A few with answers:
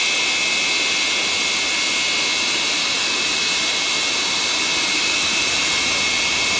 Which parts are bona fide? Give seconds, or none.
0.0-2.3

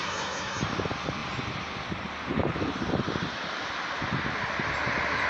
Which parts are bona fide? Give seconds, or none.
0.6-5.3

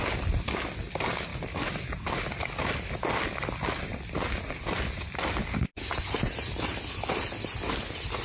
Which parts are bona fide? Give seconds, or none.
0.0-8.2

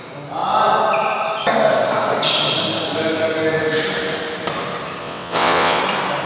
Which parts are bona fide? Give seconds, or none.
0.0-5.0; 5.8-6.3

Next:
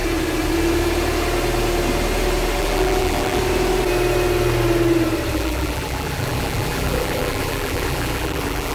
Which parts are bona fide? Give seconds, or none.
0.0-2.6; 3.4-5.3